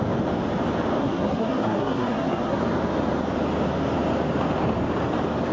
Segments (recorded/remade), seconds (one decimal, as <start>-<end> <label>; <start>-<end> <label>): 0.0-1.0 recorded; 1.0-2.6 remade; 2.6-5.5 recorded